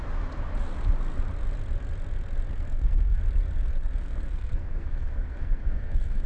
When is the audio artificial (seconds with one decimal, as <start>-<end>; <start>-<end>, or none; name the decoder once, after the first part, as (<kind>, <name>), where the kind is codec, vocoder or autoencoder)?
2.5-3.2 (codec, SNAC); 4.0-6.3